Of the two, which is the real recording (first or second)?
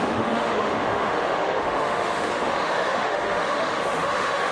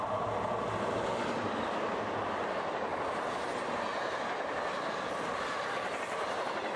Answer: second